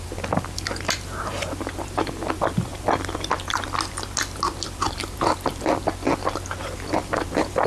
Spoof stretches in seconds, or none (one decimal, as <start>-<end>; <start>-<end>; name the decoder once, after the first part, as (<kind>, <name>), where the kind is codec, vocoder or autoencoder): none